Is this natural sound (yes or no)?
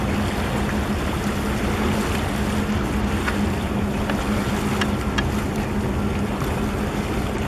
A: yes